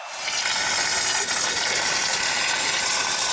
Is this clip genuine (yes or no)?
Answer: yes